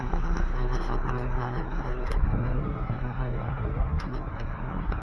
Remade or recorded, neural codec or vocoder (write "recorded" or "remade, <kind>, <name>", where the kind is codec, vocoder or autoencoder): remade, codec, SNAC